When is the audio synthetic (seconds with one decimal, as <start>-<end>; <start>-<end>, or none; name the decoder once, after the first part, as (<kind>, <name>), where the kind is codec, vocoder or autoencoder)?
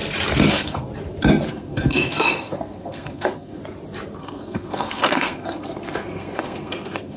0.5-0.9 (codec, SNAC); 1.5-3.6; 4.2-7.2